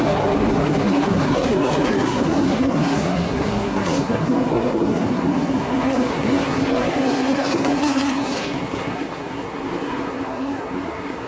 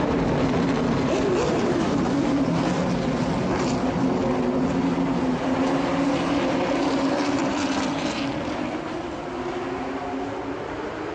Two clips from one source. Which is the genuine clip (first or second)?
second